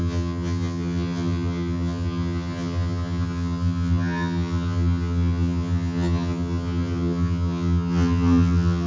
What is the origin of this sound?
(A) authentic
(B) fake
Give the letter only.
B